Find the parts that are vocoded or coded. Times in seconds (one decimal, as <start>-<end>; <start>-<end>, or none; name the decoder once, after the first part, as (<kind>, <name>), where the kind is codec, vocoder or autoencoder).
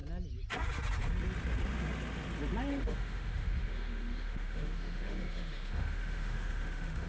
2.7-7.1 (autoencoder, DAC-VAE)